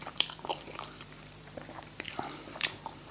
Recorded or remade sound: remade